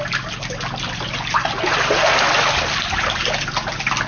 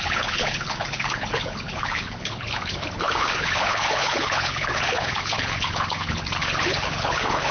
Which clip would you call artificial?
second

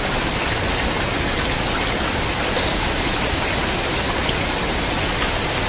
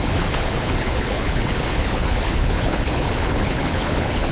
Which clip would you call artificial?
second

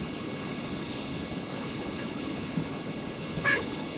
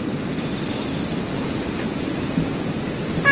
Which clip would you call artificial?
first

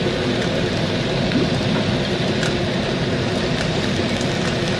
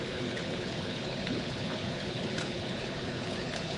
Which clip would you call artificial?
second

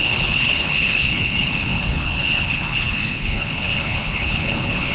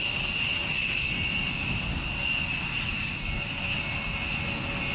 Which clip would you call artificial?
first